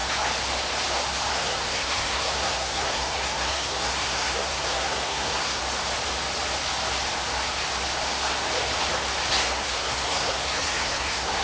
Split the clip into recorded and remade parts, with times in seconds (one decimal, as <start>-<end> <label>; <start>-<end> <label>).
0.0-1.3 recorded; 1.3-5.6 remade; 5.6-9.3 recorded; 9.3-11.4 remade